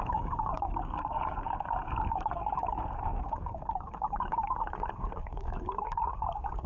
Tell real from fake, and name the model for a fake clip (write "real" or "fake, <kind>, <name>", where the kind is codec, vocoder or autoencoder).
fake, codec, DAC